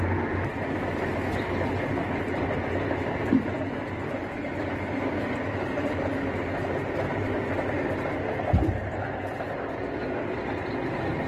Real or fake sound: real